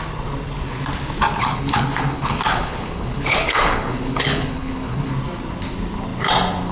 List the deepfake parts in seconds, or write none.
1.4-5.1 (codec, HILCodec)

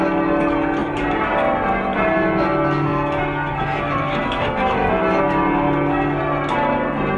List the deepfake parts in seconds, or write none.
0.8-1.3 (vocoder, BigVGAN v2)

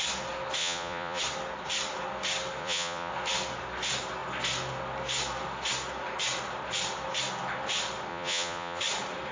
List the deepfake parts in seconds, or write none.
0.6-1.2 (vocoder, Vocos); 2.6-3.1; 8.1-8.8

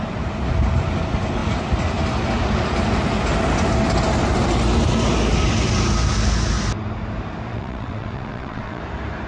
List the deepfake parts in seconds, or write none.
7.5-8.8 (vocoder, WaveNeXt)

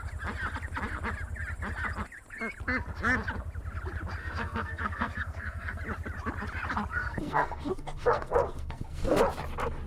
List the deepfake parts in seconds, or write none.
4.2-5.8 (codec, SNAC); 6.9-9.2

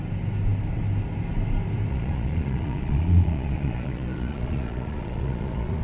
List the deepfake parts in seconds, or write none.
1.9-5.8 (vocoder, Vocos)

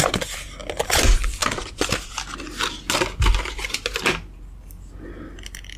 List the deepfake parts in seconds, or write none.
none